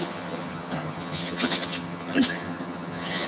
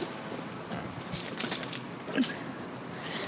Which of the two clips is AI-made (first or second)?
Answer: first